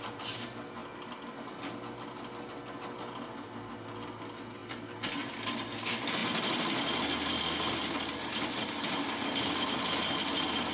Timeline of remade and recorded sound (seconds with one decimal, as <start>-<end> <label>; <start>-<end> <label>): 0.0-10.7 recorded